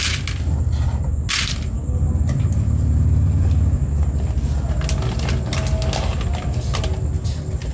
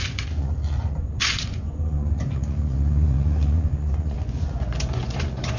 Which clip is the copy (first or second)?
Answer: second